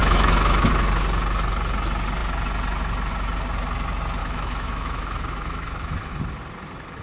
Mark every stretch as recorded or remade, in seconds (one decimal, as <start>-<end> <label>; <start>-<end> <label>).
0.0-0.7 remade; 0.7-4.2 recorded; 4.2-6.1 remade; 6.1-7.0 recorded